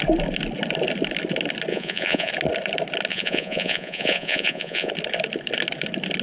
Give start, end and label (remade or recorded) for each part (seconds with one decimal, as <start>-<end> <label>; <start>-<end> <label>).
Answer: 0.0-1.7 recorded; 1.7-2.3 remade; 2.3-3.1 recorded; 3.1-4.9 remade; 4.9-6.2 recorded